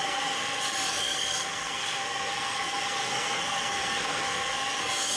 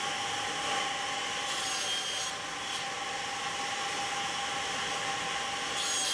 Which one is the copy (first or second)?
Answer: first